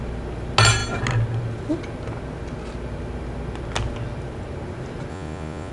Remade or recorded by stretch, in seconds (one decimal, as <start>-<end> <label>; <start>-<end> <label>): 0.0-5.1 recorded; 5.1-5.7 remade